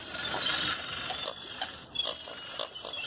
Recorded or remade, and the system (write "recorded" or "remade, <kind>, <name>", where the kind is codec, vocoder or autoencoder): recorded